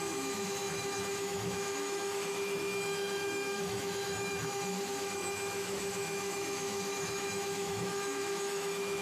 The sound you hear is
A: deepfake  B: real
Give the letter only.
A